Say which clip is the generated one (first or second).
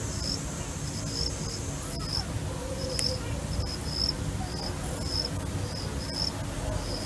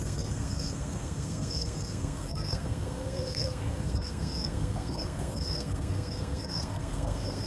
second